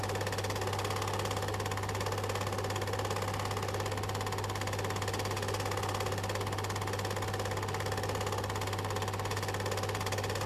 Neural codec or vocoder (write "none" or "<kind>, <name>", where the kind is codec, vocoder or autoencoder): none